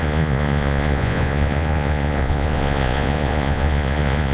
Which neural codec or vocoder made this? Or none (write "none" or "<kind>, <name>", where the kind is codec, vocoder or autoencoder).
vocoder, Vocos